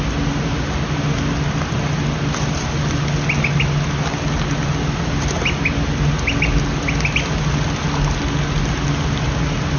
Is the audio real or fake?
real